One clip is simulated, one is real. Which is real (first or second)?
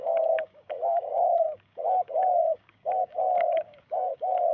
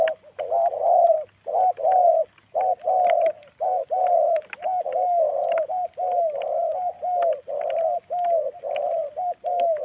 second